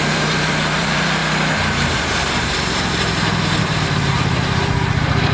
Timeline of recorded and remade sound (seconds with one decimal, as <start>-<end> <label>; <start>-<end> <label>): 0.0-1.2 remade; 1.2-3.6 recorded; 3.6-5.3 remade

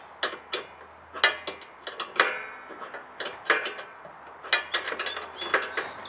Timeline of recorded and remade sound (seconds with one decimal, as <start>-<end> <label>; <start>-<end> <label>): 0.0-3.6 recorded; 3.6-4.1 remade; 4.1-6.1 recorded

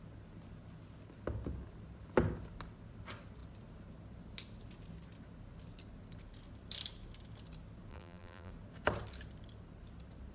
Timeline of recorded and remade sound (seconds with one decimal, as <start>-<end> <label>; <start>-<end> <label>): 0.0-7.9 recorded; 7.9-8.5 remade; 8.5-10.3 recorded

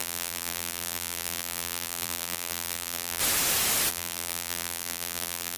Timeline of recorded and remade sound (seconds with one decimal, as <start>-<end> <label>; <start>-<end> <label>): 0.0-3.2 remade; 3.2-3.9 recorded; 3.9-5.6 remade

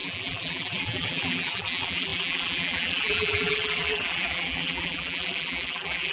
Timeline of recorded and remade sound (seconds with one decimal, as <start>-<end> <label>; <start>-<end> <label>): 0.0-6.1 remade

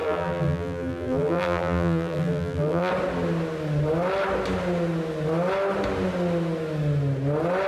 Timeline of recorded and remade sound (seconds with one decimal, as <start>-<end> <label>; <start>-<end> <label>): 0.0-2.9 remade; 2.9-7.7 recorded

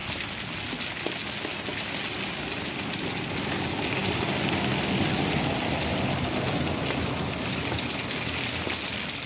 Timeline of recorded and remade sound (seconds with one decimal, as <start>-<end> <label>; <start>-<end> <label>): 0.0-9.3 recorded

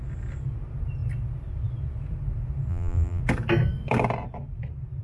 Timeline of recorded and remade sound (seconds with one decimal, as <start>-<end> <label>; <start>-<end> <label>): 0.0-2.7 recorded; 2.7-3.2 remade; 3.2-5.0 recorded